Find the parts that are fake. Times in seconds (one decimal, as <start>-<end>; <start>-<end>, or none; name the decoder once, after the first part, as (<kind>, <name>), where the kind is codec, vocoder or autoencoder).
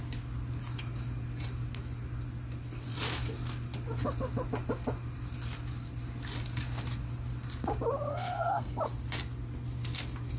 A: 8.1-8.8 (codec, SNAC)